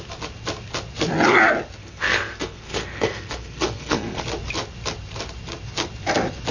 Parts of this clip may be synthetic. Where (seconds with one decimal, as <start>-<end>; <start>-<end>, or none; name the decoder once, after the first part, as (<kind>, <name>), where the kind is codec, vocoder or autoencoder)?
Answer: 1.8-4.2 (codec, SNAC)